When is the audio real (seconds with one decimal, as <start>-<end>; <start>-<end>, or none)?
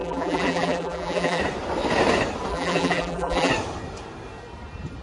1.4-2.5; 3.5-5.0